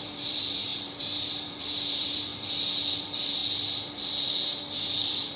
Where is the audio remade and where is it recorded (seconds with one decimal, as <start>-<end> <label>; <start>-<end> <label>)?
0.0-2.3 remade; 2.3-3.0 recorded; 3.0-3.4 remade; 3.4-4.1 recorded; 4.1-5.4 remade